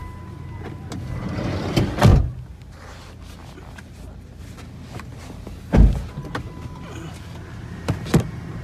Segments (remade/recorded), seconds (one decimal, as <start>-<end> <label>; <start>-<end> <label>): 0.0-8.6 recorded